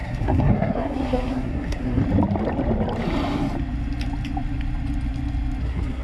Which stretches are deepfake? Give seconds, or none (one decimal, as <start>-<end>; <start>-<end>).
0.0-2.0; 5.6-6.0